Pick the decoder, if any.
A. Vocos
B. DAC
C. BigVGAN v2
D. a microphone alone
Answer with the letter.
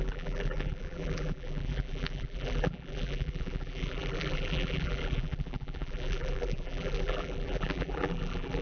C